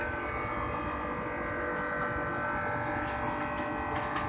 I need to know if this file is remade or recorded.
recorded